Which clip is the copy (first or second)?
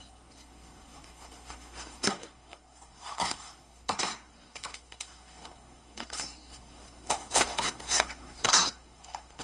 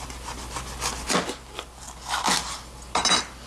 first